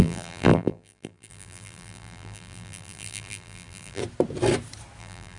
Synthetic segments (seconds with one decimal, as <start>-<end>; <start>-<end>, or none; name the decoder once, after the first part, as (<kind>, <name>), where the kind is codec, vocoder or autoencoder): 0.0-4.0 (vocoder, BigVGAN v2); 5.0-5.4